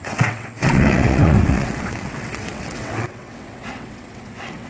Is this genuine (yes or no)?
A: no